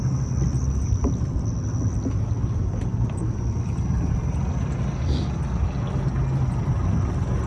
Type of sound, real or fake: real